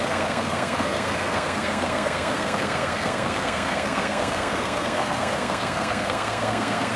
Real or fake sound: fake